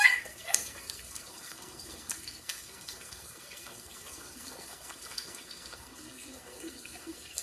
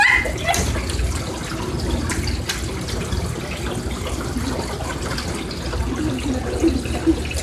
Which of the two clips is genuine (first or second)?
second